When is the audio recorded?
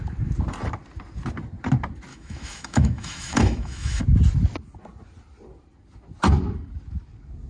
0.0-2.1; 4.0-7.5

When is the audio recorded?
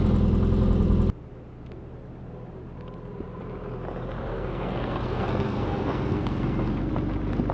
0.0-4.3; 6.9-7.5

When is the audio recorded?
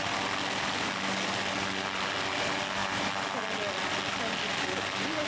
0.0-5.3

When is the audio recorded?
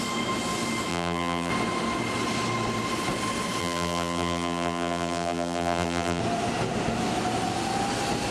0.0-0.9; 1.5-3.6; 6.2-8.3